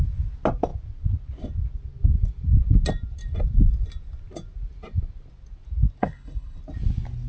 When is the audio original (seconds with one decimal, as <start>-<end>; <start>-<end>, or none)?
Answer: 0.0-6.0; 6.6-7.3